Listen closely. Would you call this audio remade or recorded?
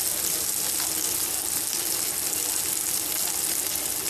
recorded